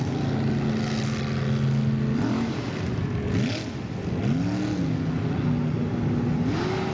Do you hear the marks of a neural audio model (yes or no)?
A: no